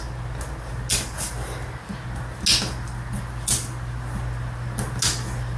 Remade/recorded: recorded